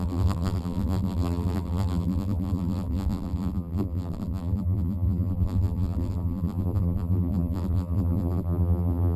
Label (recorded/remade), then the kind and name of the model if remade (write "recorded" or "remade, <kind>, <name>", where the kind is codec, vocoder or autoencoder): remade, vocoder, BigVGAN v2